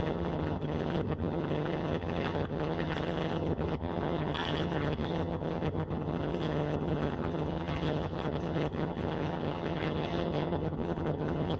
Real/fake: fake